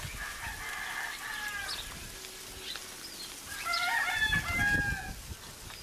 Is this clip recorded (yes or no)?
yes